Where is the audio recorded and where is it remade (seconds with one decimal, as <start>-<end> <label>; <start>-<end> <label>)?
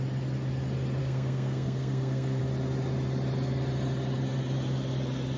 0.0-1.0 recorded; 1.0-2.4 remade; 2.4-5.4 recorded